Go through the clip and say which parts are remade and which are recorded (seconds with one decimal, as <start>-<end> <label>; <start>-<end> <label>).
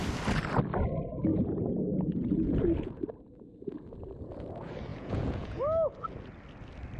0.0-1.3 recorded; 1.3-3.1 remade; 3.1-4.9 recorded; 4.9-5.6 remade; 5.6-7.0 recorded